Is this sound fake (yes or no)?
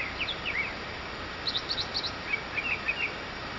no